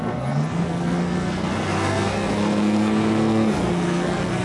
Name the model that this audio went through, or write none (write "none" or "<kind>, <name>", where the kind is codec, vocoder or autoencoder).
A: codec, SNAC